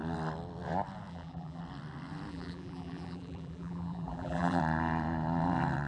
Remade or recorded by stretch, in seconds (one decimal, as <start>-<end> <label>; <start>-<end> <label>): 0.0-1.1 recorded; 1.1-1.6 remade; 1.6-2.3 recorded; 2.3-4.6 remade; 4.6-5.9 recorded